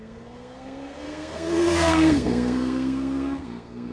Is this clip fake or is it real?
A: fake